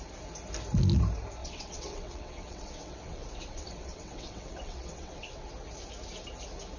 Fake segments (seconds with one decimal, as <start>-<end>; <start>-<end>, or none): 1.4-5.5